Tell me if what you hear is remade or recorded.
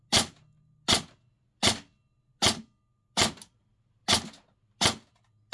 recorded